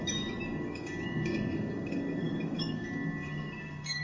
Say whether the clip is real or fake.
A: fake